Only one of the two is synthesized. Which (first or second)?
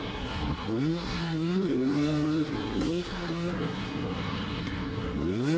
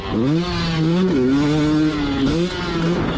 first